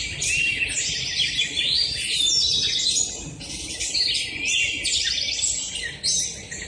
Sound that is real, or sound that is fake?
real